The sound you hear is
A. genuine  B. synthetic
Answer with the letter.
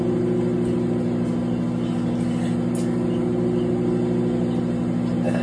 A